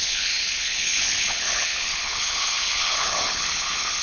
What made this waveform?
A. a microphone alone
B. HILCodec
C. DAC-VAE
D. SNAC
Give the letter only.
B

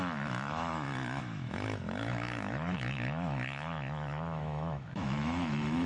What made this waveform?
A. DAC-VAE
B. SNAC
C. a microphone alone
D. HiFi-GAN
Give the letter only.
A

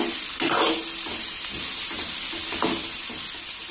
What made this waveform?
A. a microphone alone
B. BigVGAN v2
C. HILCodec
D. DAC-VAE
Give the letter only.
A